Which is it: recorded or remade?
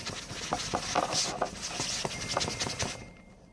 recorded